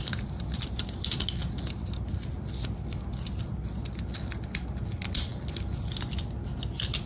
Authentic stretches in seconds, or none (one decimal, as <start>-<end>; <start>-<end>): 0.0-7.1